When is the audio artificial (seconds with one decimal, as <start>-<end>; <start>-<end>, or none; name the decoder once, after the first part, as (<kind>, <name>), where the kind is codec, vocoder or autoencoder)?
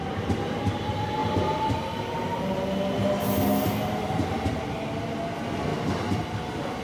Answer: 1.2-1.8 (vocoder, BigVGAN v2); 5.7-6.8